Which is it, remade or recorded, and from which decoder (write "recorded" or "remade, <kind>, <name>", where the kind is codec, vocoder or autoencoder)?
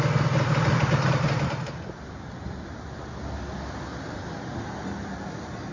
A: recorded